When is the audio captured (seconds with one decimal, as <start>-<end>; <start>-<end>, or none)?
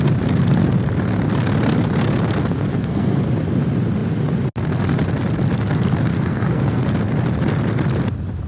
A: 0.0-2.7; 3.2-6.1; 6.8-8.5